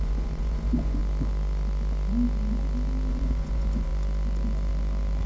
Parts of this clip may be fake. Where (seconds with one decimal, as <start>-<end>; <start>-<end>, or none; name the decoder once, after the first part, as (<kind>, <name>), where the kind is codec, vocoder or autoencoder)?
0.0-1.0 (vocoder, Vocos); 3.1-3.9